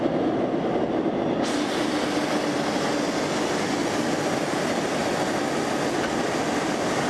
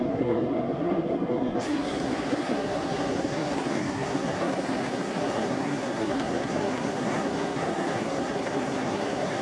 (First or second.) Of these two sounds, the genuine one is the first